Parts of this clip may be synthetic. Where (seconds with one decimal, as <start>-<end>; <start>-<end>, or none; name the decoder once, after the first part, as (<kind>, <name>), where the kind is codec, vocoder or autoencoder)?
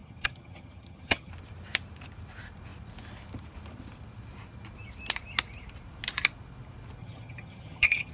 0.0-1.3 (vocoder, HiFi-GAN); 7.0-8.1